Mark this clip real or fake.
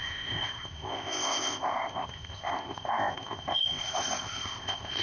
fake